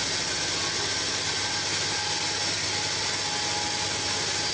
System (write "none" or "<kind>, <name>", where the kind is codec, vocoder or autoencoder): none